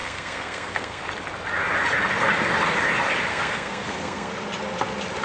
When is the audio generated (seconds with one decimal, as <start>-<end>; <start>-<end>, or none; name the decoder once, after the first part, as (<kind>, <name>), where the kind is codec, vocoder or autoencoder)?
0.0-1.0 (codec, SNAC); 3.3-4.3